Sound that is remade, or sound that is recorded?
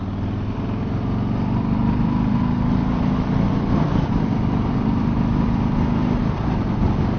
remade